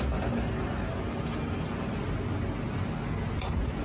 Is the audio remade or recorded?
recorded